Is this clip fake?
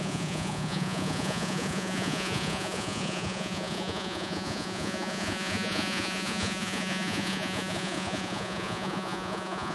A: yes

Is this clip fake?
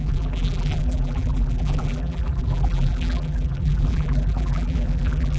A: yes